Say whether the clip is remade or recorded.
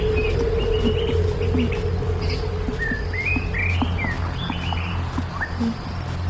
recorded